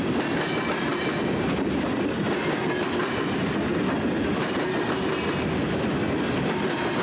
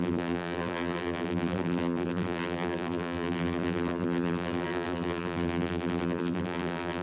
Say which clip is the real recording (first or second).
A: first